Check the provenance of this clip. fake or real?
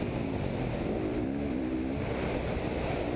real